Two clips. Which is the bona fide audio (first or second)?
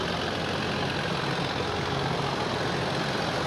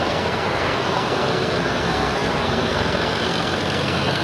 first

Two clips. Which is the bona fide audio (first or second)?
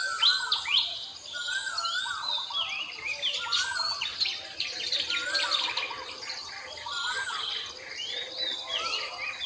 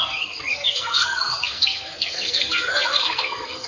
first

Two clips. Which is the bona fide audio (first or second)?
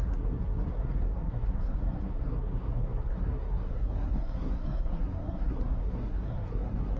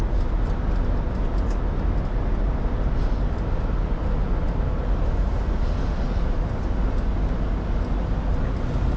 second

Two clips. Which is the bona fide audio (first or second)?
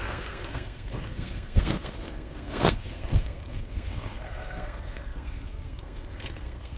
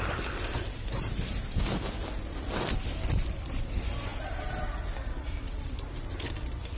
second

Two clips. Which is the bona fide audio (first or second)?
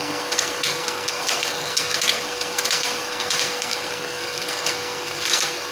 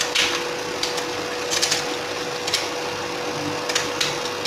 second